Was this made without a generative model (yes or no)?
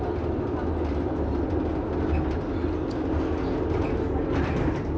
yes